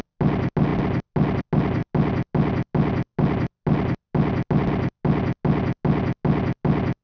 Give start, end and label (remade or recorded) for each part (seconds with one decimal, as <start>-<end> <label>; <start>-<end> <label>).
0.0-7.0 recorded